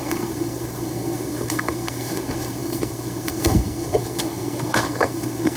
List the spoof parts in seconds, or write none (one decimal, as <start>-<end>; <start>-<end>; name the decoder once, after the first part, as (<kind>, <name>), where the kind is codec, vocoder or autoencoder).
0.0-5.6 (codec, SNAC)

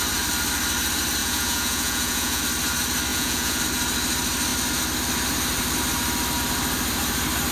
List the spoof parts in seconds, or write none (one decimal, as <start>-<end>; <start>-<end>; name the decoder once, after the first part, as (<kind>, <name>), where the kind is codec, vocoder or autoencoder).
1.2-2.4 (vocoder, Vocos); 3.1-3.6

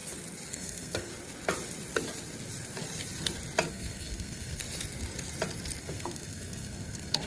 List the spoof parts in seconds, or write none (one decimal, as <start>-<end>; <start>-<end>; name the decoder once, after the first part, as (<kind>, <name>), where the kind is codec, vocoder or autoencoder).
0.5-1.1 (codec, SNAC); 3.7-4.6; 5.8-7.3

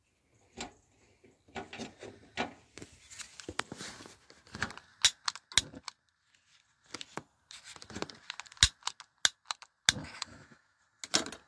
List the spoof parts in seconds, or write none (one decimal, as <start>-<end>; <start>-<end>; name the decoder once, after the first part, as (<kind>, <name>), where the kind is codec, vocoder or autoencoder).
10.0-10.8 (autoencoder, DAC-VAE)

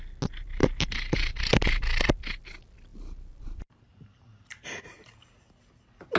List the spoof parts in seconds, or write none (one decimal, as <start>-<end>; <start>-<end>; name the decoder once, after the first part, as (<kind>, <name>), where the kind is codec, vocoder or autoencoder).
0.6-2.1 (vocoder, BigVGAN v2); 2.9-4.8

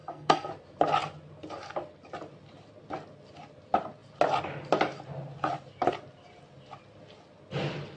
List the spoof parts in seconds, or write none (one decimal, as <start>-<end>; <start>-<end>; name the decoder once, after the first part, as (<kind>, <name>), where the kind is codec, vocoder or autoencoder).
0.0-0.5 (codec, SNAC)

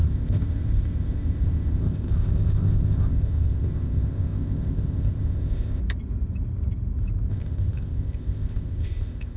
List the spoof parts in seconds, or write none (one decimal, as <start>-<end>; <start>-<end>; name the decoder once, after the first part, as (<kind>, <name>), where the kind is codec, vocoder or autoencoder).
0.0-5.8 (codec, ZipCodec); 7.3-9.4